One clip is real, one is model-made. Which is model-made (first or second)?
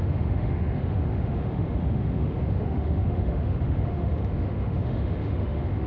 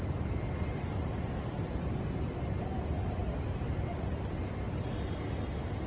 first